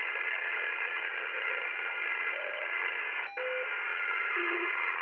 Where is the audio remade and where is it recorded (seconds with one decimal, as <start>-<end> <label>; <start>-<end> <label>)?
0.0-3.0 remade; 3.0-3.9 recorded; 3.9-5.0 remade